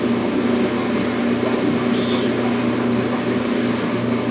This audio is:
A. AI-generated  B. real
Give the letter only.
B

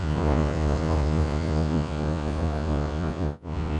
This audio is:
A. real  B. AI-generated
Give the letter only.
B